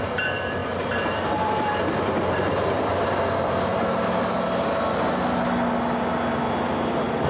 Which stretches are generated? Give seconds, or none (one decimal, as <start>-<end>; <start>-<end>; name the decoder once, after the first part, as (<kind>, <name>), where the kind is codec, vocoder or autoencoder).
0.0-3.7 (vocoder, BigVGAN v2); 6.4-7.3